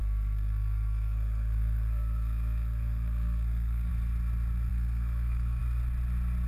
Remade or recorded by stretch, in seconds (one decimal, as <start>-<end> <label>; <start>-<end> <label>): 0.0-3.9 remade; 3.9-4.7 recorded; 4.7-5.6 remade; 5.6-6.5 recorded